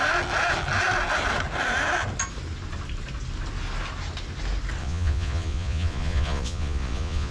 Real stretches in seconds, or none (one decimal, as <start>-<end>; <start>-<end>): 0.0-4.8